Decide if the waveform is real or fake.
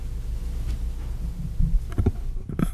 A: real